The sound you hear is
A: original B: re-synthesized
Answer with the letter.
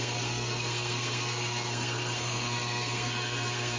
B